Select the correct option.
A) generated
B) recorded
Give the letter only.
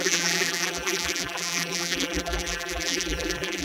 A